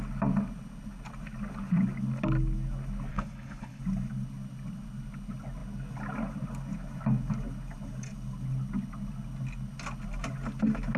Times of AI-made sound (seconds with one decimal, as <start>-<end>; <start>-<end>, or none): 3.1-3.8